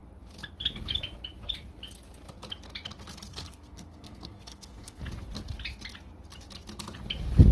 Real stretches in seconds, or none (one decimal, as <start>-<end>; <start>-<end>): 0.0-3.3; 5.0-7.5